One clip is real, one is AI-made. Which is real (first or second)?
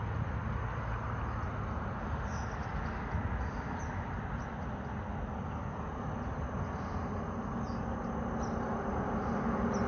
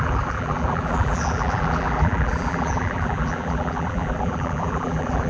first